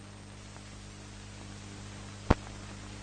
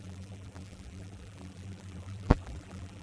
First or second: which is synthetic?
second